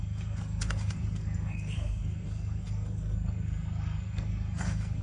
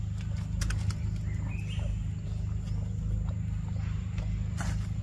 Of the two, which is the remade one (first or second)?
first